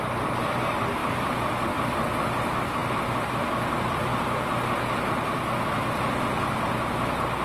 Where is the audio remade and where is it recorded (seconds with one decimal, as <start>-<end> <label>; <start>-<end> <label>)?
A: 0.0-7.4 recorded